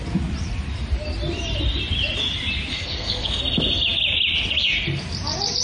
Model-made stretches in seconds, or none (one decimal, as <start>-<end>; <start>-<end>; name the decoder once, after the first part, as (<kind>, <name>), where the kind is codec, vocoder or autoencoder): 2.7-3.4 (codec, SNAC)